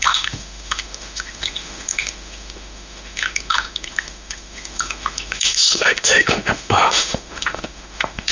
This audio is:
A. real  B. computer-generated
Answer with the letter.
B